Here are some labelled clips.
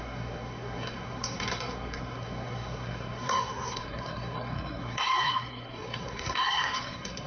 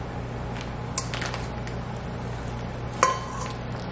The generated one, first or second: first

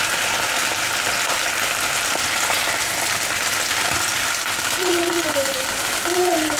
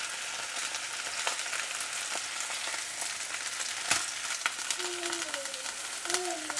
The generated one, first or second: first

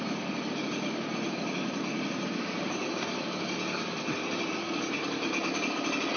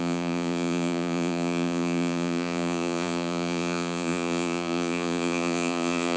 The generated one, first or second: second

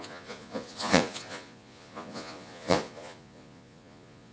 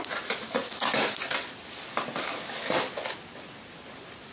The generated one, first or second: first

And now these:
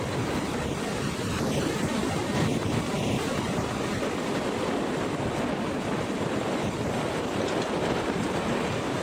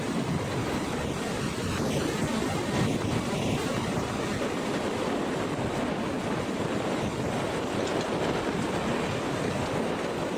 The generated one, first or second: first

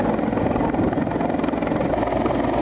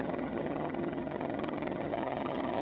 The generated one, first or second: second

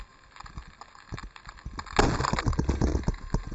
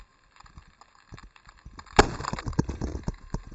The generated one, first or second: second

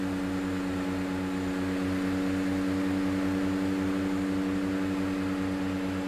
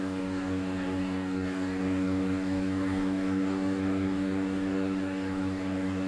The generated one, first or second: second